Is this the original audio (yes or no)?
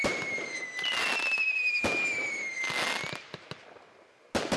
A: yes